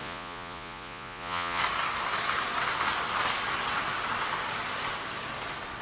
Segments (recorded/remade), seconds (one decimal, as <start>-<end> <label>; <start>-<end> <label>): 0.0-1.6 remade; 1.6-5.8 recorded